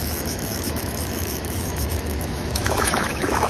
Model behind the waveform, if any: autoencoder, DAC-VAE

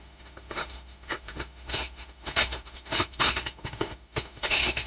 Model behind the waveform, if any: autoencoder, DAC-VAE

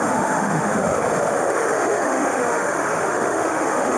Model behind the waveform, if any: autoencoder, DAC-VAE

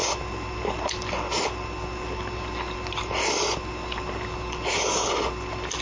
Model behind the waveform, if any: none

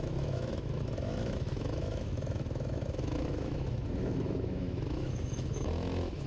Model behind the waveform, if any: autoencoder, DAC-VAE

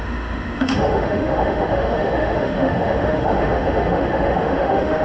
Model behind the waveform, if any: autoencoder, DAC-VAE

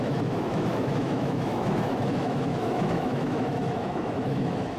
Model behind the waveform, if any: autoencoder, DAC-VAE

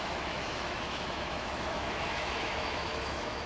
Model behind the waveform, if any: autoencoder, DAC-VAE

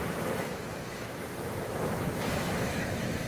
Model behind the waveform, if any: autoencoder, DAC-VAE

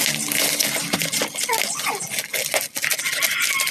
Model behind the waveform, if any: none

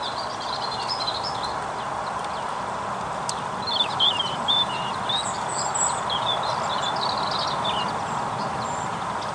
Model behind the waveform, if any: none